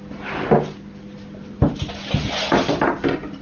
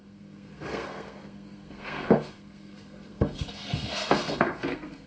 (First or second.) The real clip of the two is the first